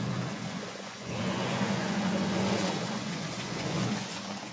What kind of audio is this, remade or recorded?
remade